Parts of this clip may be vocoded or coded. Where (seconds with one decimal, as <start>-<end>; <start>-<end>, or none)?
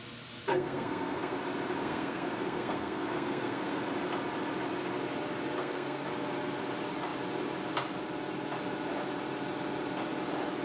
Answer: 0.5-1.4; 1.8-3.8; 5.6-6.1